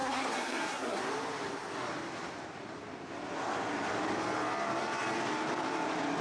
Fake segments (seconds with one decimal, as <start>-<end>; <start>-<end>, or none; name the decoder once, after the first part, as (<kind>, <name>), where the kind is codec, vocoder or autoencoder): 0.0-1.0 (codec, SNAC)